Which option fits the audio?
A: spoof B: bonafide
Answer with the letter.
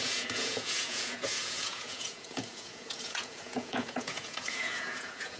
A